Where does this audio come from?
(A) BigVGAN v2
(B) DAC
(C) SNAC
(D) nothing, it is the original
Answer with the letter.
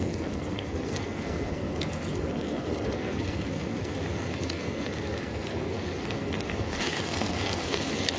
C